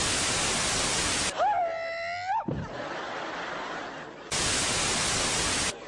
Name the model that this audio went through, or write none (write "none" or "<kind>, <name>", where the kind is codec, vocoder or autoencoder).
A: none